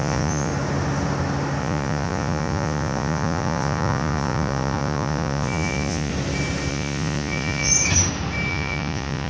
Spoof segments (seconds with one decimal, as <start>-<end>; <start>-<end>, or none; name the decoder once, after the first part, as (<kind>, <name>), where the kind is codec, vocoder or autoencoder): 0.0-0.5 (vocoder, Vocos); 1.6-6.1; 6.7-7.7; 8.5-9.3